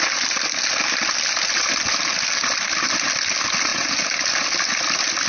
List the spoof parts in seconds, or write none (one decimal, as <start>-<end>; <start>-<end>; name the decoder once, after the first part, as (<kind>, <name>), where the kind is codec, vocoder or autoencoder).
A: none